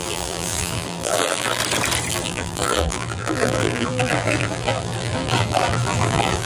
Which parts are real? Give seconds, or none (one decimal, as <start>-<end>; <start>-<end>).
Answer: 1.6-2.1